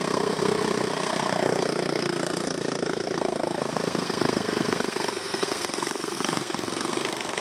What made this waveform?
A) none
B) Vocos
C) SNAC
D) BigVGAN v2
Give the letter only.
C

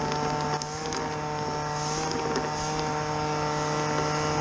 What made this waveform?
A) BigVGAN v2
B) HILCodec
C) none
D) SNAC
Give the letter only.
C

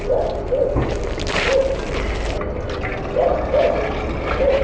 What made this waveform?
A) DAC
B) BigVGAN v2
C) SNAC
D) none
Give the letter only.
D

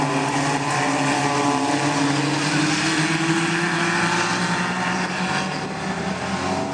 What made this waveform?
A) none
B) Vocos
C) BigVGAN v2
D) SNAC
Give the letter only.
A